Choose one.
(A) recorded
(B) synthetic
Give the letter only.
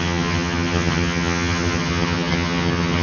B